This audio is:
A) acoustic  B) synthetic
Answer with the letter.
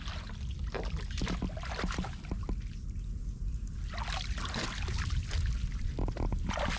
A